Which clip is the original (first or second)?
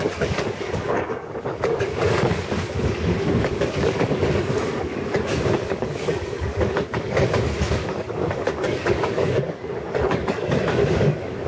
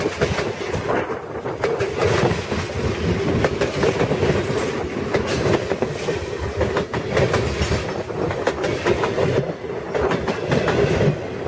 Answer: second